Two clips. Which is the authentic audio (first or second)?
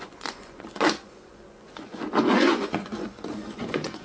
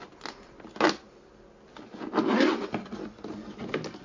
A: second